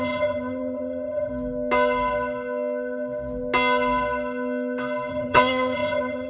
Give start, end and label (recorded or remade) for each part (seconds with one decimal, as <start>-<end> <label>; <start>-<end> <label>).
0.0-1.3 remade; 1.3-5.1 recorded; 5.1-6.3 remade

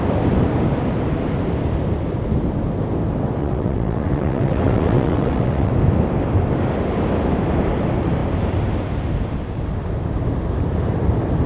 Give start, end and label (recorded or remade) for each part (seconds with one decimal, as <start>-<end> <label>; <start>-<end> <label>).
0.0-3.4 recorded; 3.4-5.7 remade; 5.7-11.5 recorded

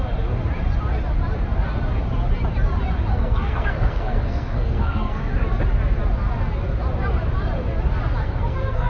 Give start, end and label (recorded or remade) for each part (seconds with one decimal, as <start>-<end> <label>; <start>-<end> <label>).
0.0-3.1 recorded; 3.1-5.2 remade; 5.2-8.2 recorded; 8.2-8.9 remade

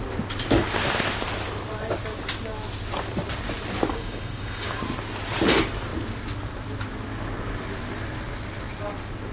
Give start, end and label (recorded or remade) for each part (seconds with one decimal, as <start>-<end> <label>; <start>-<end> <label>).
0.0-3.9 recorded; 3.9-4.8 remade; 4.8-9.3 recorded